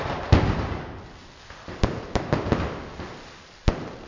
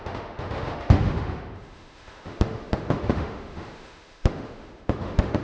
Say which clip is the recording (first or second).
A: first